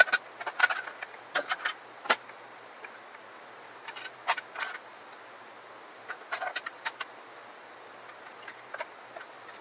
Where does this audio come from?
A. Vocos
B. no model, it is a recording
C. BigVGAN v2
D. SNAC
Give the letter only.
C